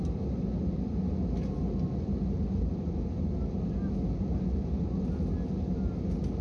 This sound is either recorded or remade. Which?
recorded